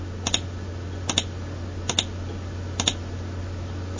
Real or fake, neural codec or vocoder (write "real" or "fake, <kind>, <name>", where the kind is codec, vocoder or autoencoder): real